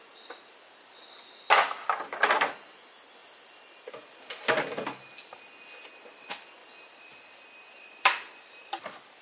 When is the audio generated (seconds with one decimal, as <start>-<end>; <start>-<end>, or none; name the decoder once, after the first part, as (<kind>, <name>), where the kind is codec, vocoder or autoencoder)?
6.6-9.2 (vocoder, BigVGAN v2)